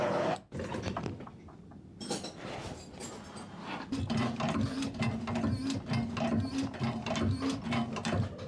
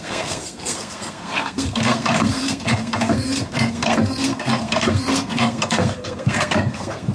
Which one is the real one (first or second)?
first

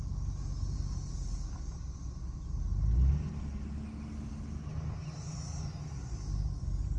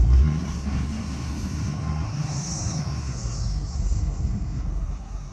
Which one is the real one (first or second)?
first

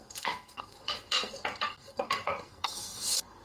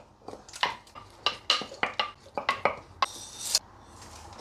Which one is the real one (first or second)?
second